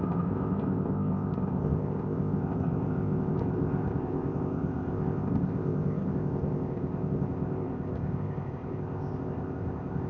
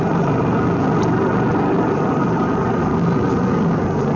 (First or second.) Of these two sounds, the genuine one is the second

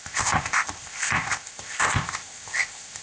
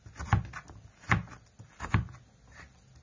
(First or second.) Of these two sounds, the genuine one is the second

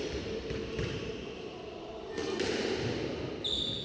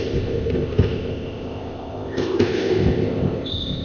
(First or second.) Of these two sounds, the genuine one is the first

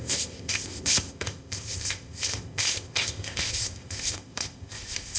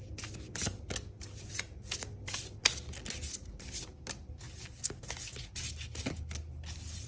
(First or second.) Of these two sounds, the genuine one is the second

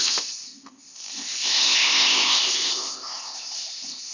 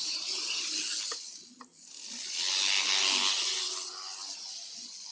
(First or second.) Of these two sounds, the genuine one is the second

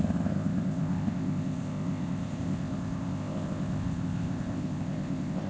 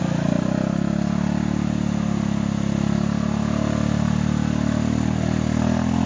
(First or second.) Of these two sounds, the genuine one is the second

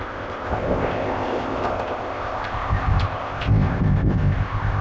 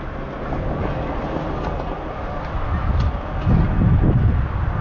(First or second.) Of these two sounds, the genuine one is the second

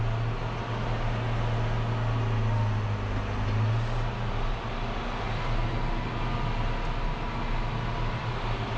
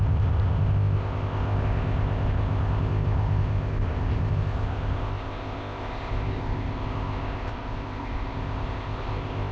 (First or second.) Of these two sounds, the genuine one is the first